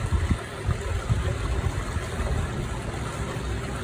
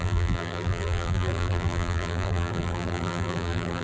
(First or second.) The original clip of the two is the first